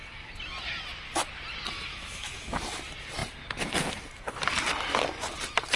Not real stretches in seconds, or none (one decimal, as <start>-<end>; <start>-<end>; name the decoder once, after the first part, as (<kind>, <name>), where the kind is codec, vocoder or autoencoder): 1.9-2.6 (autoencoder, DAC-VAE)